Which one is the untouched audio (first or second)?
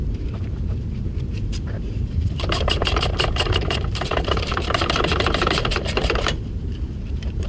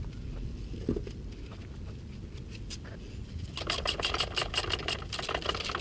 second